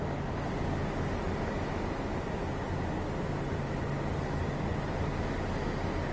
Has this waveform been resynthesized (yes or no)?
no